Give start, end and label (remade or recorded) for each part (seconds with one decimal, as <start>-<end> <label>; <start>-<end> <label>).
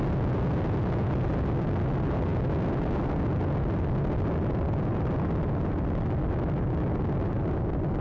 0.0-8.0 recorded